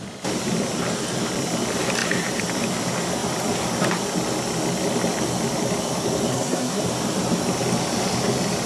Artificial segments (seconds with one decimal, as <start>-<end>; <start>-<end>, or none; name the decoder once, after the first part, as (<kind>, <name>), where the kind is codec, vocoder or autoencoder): 6.3-6.8 (codec, SNAC)